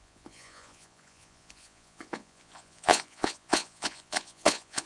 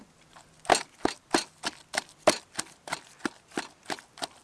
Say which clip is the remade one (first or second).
first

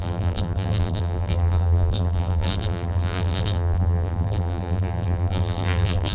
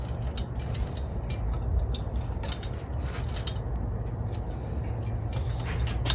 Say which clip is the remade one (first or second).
first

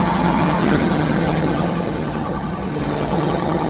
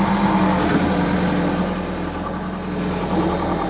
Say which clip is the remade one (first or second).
first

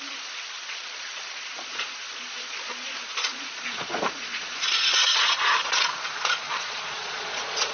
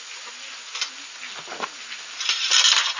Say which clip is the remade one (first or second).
first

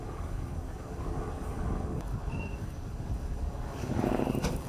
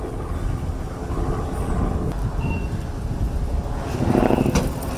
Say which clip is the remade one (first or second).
first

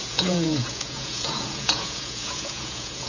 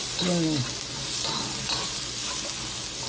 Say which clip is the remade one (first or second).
first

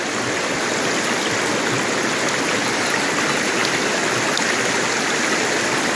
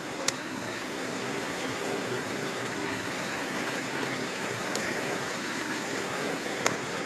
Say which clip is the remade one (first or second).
second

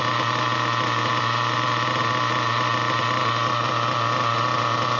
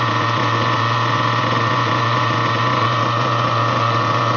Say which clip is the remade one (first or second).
second